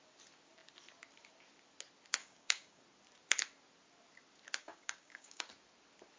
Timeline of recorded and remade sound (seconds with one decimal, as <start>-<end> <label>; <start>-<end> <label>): 0.0-2.2 recorded; 2.2-2.8 remade; 2.8-4.6 recorded; 4.6-5.5 remade; 5.5-6.2 recorded